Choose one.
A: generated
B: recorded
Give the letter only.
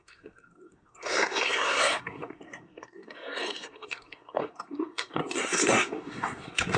A